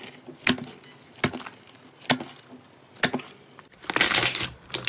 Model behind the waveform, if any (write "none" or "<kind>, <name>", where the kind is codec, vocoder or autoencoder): none